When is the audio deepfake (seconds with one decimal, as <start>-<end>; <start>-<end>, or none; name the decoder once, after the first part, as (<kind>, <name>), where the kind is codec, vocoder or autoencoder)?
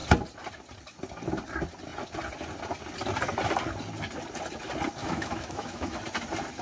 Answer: 5.0-6.0 (autoencoder, DAC-VAE)